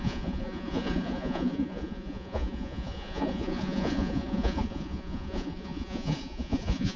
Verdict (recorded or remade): remade